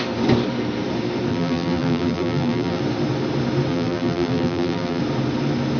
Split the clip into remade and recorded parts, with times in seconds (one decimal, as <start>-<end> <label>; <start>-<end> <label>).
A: 0.0-1.3 recorded; 1.3-2.8 remade; 2.8-3.7 recorded; 3.7-5.0 remade; 5.0-5.8 recorded